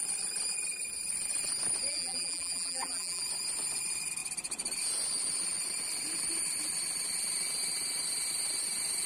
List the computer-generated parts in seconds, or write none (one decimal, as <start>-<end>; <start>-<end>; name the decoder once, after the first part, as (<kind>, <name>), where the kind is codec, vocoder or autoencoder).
1.9-3.2 (vocoder, BigVGAN v2)